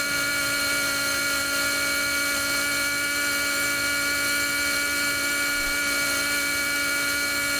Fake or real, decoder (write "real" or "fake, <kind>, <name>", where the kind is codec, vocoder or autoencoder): real